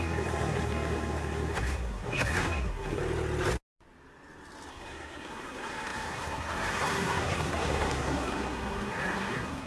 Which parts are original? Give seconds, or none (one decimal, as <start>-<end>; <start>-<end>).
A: 3.0-4.7

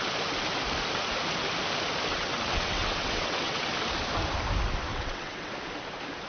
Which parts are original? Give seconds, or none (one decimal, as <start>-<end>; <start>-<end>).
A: 0.0-2.1; 3.7-4.9; 5.5-6.3

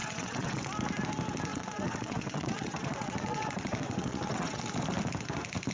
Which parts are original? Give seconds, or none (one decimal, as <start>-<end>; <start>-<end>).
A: 0.6-1.5; 4.6-5.7